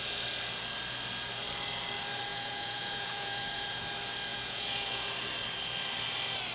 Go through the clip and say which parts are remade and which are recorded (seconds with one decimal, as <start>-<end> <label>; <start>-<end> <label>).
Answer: 0.0-2.3 recorded; 2.3-3.8 remade; 3.8-4.3 recorded; 4.3-5.1 remade; 5.1-6.5 recorded